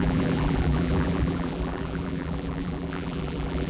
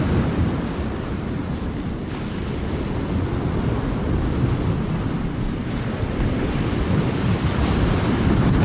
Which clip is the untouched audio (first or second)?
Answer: second